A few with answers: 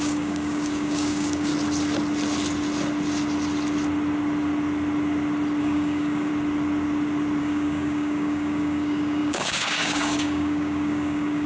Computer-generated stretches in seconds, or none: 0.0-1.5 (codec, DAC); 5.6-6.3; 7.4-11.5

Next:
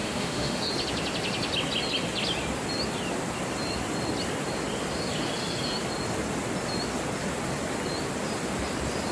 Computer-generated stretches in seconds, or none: 0.0-0.6 (autoencoder, DAC-VAE)

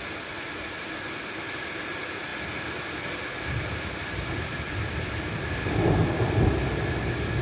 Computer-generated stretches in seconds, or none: none

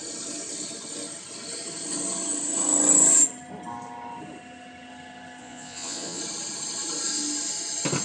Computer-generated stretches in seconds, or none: 5.4-6.2 (vocoder, Vocos)